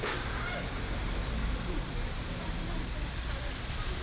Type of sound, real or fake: fake